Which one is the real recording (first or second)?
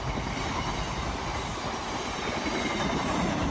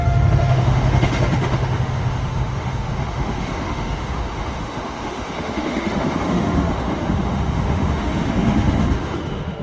first